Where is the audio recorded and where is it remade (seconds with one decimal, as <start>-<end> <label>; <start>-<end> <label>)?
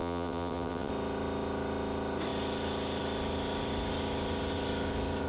0.0-0.9 remade; 0.9-5.3 recorded